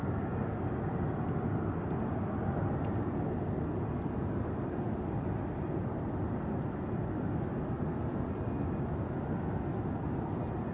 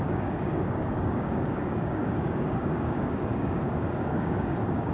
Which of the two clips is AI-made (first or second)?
second